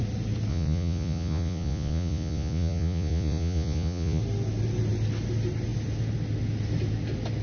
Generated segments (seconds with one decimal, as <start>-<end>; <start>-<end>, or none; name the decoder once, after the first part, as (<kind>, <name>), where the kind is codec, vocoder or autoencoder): 0.5-4.2 (vocoder, Vocos)